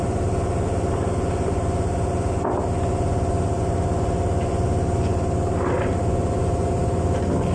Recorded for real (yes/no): yes